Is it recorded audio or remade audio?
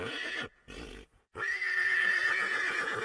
remade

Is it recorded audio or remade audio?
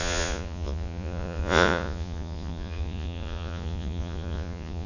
remade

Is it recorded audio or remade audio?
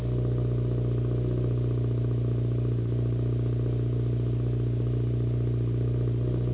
recorded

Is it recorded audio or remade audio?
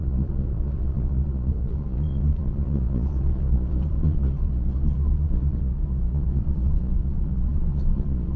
remade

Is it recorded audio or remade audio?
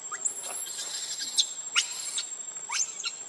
recorded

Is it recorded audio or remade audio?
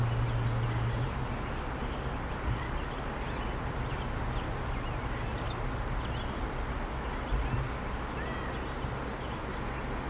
recorded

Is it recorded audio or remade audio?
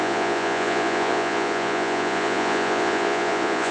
remade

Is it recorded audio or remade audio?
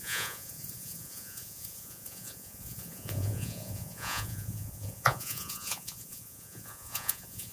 remade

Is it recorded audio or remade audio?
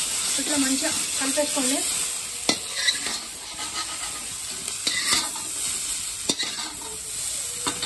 recorded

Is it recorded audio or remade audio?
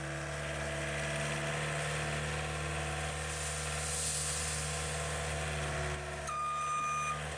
recorded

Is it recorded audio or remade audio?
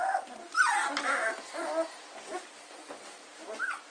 recorded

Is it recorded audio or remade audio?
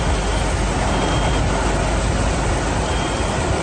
recorded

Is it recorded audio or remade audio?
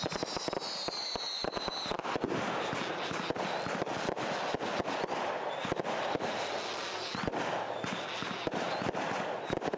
recorded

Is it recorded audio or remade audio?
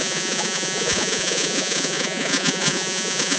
remade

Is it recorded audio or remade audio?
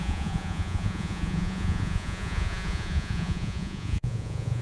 remade